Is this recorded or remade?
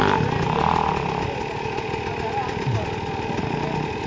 recorded